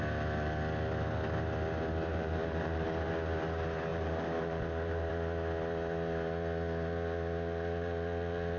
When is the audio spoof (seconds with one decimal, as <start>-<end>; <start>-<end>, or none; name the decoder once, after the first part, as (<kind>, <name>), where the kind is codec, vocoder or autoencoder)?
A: 2.1-3.1 (vocoder, BigVGAN v2); 3.9-5.1